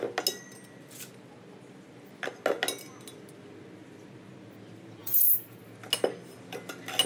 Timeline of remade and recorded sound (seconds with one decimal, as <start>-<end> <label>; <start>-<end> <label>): 0.0-5.0 recorded; 5.0-5.6 remade; 5.6-7.1 recorded